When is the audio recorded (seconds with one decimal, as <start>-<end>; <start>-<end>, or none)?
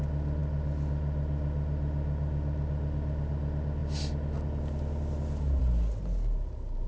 0.0-6.9